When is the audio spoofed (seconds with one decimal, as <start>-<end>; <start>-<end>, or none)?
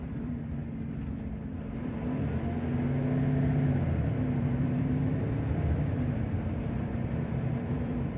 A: 0.0-0.6; 4.4-5.0; 5.5-8.2